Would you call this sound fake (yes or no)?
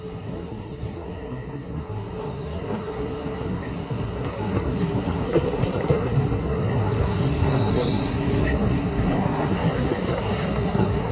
yes